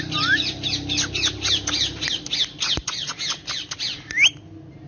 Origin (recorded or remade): recorded